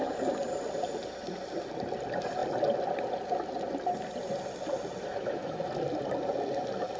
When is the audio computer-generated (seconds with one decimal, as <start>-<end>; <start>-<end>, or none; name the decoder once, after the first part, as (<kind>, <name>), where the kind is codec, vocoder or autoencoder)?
5.1-5.6 (autoencoder, DAC-VAE)